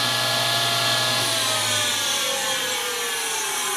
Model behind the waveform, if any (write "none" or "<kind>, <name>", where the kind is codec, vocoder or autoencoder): none